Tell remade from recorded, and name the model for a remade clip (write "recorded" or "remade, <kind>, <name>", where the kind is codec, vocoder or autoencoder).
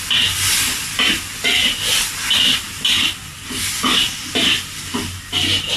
recorded